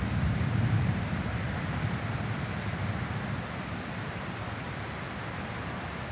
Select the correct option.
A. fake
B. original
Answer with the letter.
A